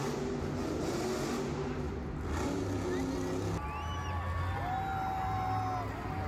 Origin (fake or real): real